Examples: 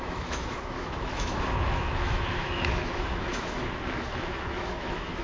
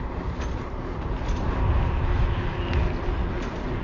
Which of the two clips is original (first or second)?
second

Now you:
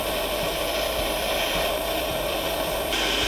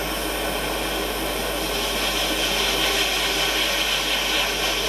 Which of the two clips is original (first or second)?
second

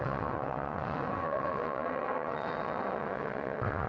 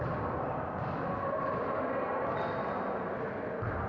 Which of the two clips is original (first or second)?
second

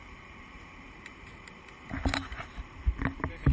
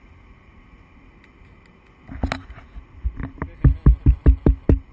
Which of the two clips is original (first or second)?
second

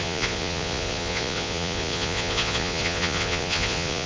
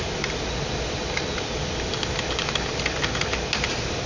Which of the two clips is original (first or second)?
second